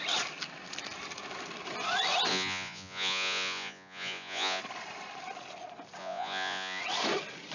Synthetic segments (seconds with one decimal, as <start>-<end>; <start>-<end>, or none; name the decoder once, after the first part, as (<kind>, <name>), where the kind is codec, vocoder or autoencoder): 2.3-4.6 (vocoder, Vocos); 6.0-6.8